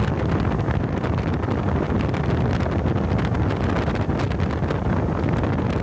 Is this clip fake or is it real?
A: real